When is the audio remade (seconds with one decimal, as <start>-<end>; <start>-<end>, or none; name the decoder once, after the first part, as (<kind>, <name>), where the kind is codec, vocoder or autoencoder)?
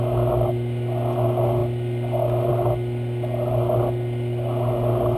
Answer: none